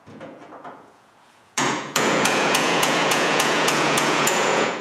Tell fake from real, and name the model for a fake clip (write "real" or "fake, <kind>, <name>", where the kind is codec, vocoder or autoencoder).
fake, vocoder, Vocos